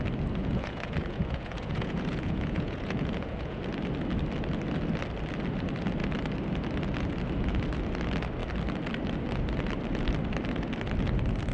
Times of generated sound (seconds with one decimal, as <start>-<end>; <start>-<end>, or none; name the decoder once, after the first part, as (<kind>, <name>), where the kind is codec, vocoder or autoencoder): 0.4-3.6 (vocoder, Vocos)